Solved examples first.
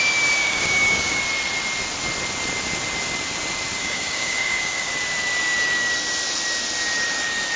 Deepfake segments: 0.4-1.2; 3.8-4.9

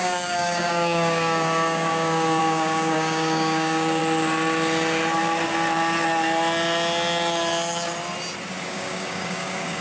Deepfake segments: 0.0-4.0; 8.7-9.8

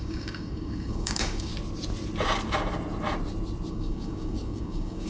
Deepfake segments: 0.0-1.5; 3.7-5.1

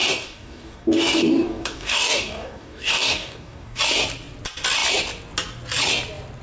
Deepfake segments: 0.0-3.8

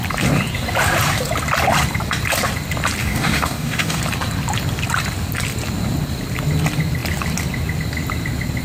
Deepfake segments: 3.0-4.0

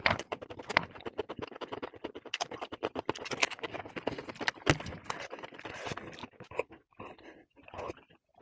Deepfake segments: 3.4-3.9; 6.2-7.0

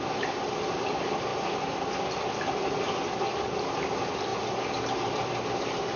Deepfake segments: none